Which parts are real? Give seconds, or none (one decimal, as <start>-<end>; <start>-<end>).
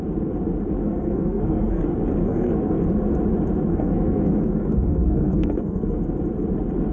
0.0-0.8; 1.8-2.2; 2.8-3.7; 6.0-6.9